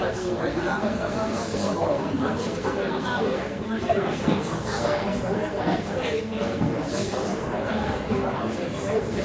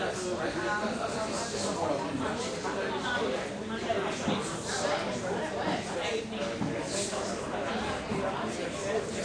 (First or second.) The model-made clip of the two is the first